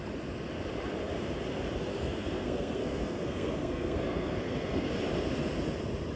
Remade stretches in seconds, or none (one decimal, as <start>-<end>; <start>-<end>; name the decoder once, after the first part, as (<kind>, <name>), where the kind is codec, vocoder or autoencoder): 1.9-4.9 (codec, SNAC)